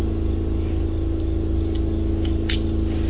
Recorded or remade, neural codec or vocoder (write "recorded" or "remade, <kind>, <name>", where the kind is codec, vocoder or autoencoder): recorded